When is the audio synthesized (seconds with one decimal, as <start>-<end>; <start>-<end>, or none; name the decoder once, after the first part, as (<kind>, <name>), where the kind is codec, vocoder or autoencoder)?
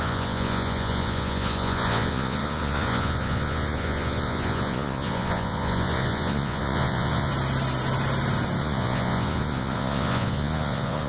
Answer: 0.0-7.3 (vocoder, Vocos); 8.6-11.1